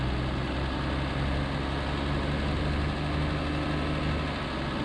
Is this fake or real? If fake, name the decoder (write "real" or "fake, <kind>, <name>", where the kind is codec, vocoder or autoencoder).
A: real